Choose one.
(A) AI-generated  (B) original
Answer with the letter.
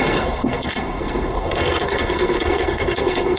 A